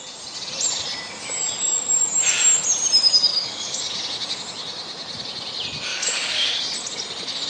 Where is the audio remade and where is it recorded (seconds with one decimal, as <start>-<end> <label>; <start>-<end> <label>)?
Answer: 0.0-3.3 recorded; 3.3-3.8 remade; 3.8-5.9 recorded; 5.9-6.6 remade; 6.6-7.5 recorded